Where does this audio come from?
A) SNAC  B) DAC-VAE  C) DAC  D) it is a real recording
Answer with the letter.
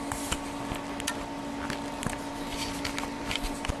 D